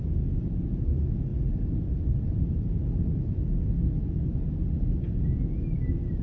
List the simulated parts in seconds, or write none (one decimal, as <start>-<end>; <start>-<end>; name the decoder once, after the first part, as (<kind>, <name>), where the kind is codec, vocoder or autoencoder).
none